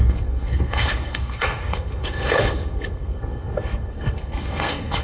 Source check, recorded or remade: remade